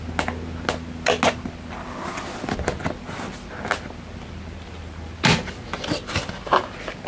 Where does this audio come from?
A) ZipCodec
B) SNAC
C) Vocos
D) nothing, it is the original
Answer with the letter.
D